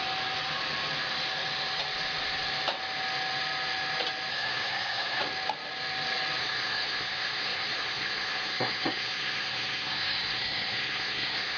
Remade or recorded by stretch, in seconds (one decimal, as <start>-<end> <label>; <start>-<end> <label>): 0.0-4.3 recorded; 4.3-5.2 remade; 5.2-6.4 recorded; 6.4-11.6 remade